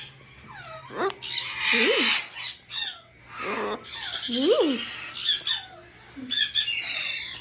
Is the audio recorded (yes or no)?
yes